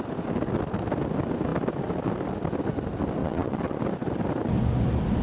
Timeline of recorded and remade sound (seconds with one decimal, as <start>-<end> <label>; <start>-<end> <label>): 0.0-3.2 recorded; 3.2-3.8 remade; 3.8-5.2 recorded